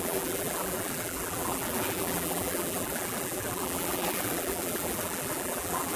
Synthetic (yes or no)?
yes